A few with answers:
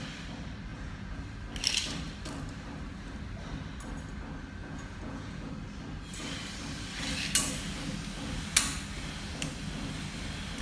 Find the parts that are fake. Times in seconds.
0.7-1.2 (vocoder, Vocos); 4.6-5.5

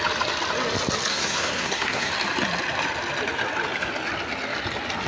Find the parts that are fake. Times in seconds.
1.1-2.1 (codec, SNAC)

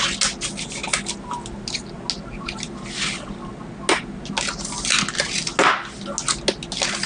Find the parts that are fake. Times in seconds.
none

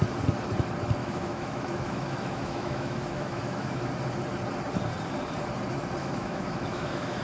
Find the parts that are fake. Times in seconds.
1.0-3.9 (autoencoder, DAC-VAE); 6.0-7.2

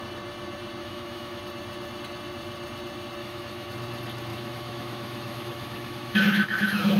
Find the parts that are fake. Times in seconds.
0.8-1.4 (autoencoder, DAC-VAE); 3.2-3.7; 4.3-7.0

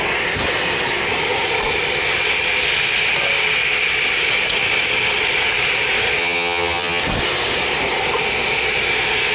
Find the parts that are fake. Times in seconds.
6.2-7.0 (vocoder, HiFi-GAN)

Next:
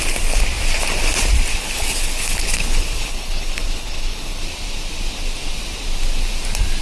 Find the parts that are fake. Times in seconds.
1.5-4.4 (codec, HILCodec)

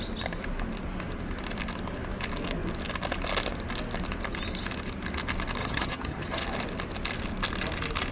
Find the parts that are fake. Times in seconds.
5.6-6.4 (vocoder, HiFi-GAN)